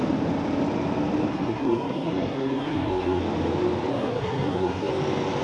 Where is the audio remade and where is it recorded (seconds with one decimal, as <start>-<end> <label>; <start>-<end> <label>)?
0.0-1.3 recorded; 1.3-3.2 remade; 3.2-3.9 recorded; 3.9-4.9 remade; 4.9-5.4 recorded